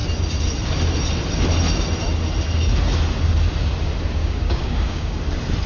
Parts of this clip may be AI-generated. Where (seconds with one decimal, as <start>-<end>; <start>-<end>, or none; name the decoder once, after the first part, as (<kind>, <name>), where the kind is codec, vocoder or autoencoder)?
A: 4.2-5.2 (codec, DAC)